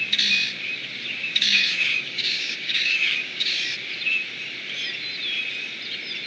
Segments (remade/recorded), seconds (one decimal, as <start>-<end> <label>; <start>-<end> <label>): 0.0-1.2 recorded; 1.2-3.5 remade; 3.5-6.3 recorded